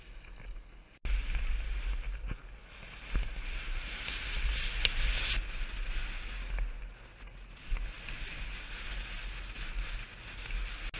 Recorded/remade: recorded